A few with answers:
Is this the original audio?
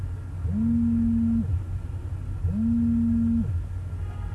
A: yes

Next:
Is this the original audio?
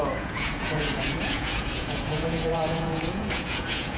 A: no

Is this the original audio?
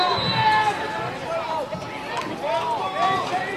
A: yes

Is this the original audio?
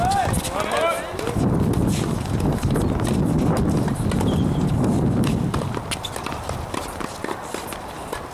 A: yes